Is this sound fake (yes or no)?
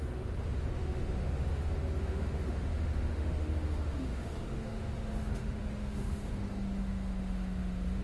yes